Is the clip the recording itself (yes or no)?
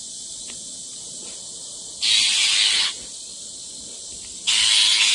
yes